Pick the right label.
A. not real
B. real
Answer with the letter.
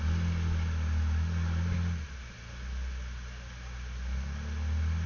B